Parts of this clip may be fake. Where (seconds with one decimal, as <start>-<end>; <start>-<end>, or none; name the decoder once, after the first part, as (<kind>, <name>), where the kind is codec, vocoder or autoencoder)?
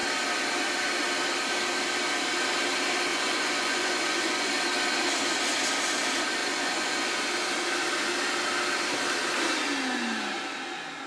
3.1-4.5 (vocoder, Vocos); 6.4-7.1